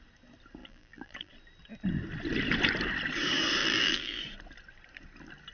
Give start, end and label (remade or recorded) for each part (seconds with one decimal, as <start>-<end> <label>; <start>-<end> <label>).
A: 0.0-0.6 recorded; 0.6-1.3 remade; 1.3-3.6 recorded; 3.6-4.2 remade; 4.2-5.5 recorded